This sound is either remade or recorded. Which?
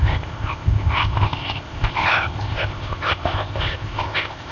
remade